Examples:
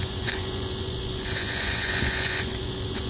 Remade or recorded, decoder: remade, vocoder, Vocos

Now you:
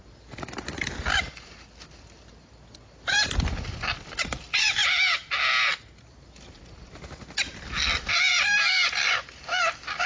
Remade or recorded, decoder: recorded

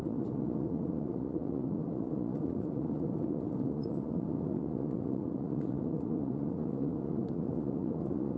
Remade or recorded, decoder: remade, vocoder, Vocos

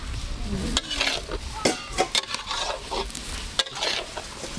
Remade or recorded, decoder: recorded